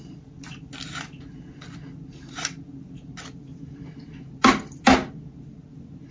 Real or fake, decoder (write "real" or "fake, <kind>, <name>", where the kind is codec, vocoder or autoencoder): real